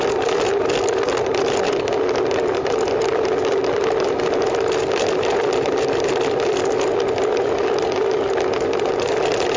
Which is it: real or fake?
real